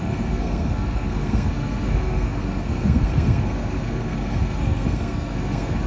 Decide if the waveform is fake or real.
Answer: fake